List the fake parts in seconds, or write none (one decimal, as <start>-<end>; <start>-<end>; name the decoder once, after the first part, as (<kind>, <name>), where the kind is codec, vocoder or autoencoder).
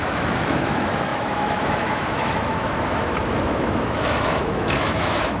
0.0-5.4 (autoencoder, DAC-VAE)